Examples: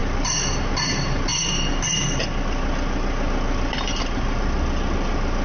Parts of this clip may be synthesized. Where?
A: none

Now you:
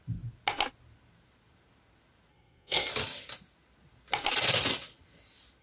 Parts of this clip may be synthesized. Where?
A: 2.3-2.9

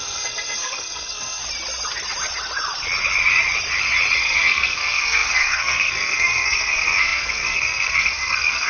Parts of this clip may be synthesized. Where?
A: 0.0-1.4; 4.2-8.7

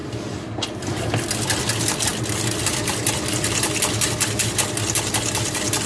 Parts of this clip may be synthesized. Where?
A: none

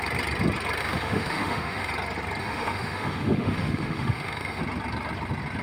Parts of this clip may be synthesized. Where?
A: 0.8-1.9; 2.4-4.6